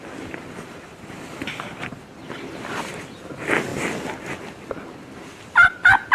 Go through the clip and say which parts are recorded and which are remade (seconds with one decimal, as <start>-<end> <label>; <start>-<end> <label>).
0.0-6.1 recorded